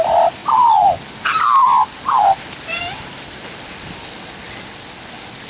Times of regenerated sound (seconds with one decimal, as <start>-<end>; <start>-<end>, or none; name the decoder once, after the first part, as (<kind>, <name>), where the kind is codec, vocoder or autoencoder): none